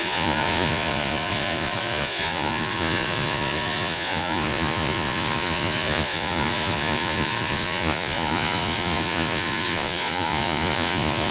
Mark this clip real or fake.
fake